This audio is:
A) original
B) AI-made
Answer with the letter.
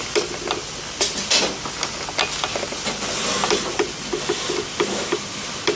A